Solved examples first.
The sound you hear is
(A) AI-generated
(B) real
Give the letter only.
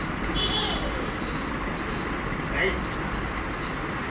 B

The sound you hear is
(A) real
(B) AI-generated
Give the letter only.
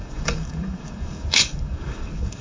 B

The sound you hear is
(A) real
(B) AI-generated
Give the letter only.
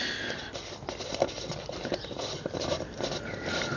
A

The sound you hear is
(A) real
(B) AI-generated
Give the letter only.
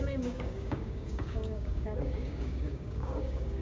B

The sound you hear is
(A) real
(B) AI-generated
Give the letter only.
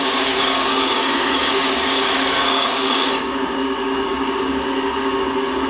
B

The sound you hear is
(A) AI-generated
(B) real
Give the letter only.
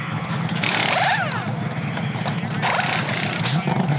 B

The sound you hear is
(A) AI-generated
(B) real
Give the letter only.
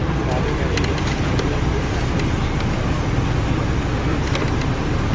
B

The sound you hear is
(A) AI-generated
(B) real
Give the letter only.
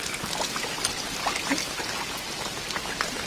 B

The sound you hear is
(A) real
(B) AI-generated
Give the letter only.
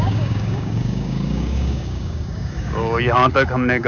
B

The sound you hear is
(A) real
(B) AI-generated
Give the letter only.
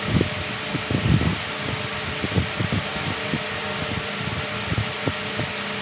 A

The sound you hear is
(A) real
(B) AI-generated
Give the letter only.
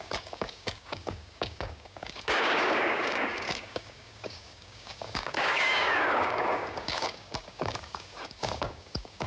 B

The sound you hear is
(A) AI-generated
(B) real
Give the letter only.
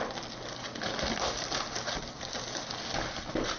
B